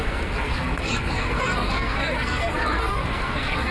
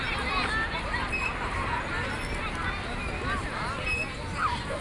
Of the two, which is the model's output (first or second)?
first